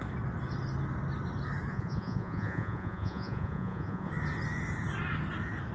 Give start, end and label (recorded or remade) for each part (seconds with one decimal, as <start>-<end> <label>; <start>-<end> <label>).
0.0-1.7 recorded; 1.7-4.1 remade; 4.1-5.7 recorded